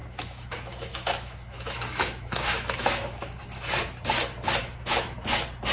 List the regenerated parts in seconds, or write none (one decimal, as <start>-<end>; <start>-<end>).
0.0-3.4; 4.6-5.3